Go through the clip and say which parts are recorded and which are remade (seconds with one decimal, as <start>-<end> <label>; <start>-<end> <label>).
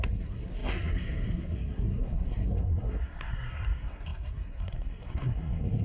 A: 0.0-5.8 remade